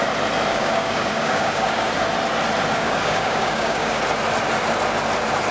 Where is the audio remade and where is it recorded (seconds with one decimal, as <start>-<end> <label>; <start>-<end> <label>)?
0.0-0.5 recorded; 0.5-1.9 remade; 1.9-2.7 recorded; 2.7-4.0 remade; 4.0-5.5 recorded